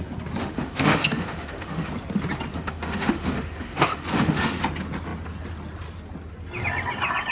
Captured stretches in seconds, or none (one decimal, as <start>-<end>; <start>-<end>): 0.0-0.4; 1.9-2.5; 4.6-7.3